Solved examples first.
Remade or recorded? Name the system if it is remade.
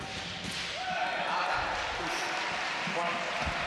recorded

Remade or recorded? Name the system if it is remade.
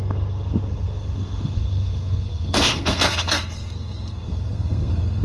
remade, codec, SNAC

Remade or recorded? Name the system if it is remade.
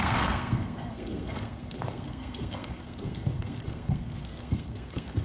remade, codec, SNAC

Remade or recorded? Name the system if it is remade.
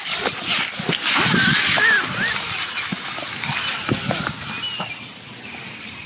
recorded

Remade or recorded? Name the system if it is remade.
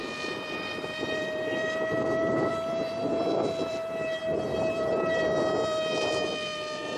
remade, vocoder, BigVGAN v2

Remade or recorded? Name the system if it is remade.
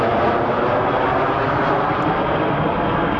recorded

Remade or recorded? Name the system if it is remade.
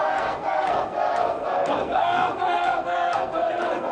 remade, codec, SNAC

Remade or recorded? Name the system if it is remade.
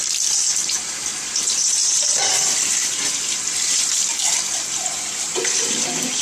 remade, vocoder, BigVGAN v2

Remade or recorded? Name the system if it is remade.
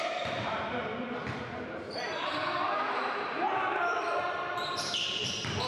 remade, vocoder, BigVGAN v2